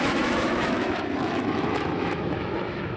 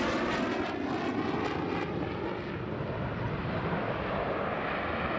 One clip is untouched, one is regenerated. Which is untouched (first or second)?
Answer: second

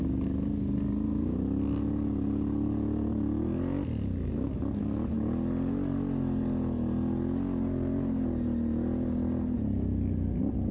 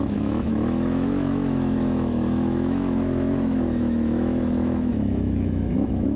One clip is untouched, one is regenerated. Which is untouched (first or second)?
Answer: first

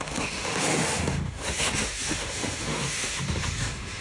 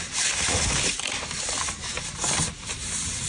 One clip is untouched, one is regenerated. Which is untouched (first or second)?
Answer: second